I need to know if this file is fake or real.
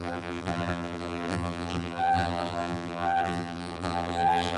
fake